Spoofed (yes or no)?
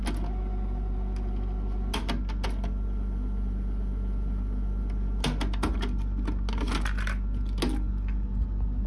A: no